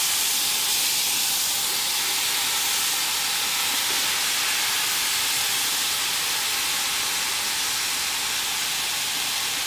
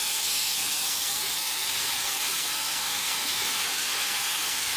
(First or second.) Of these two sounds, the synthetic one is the second